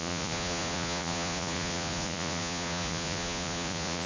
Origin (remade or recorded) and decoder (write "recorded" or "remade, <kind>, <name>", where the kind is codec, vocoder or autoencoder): remade, vocoder, Vocos